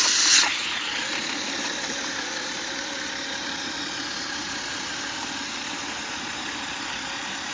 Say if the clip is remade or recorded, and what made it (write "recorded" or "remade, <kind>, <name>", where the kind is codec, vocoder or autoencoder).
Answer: recorded